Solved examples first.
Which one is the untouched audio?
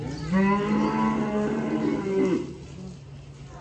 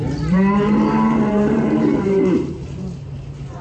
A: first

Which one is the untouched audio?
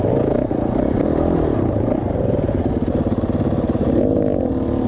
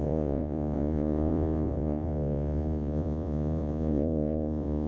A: first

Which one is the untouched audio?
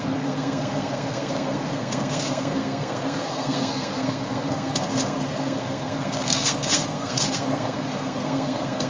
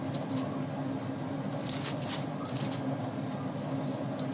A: second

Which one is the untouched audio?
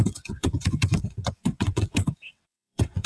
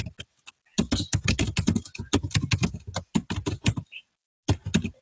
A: second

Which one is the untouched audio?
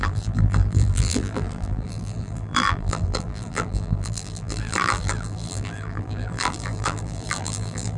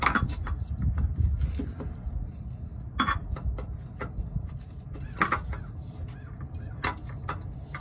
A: second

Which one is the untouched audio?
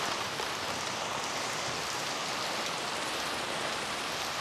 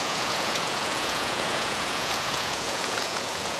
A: first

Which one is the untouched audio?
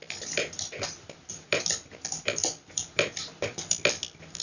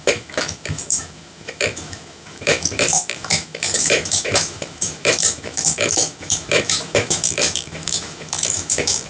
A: first